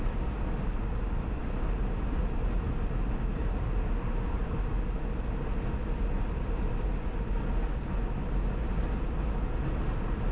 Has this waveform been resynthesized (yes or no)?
no